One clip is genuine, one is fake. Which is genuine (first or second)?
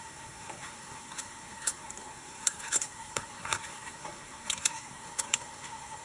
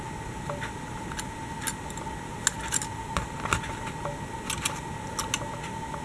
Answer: second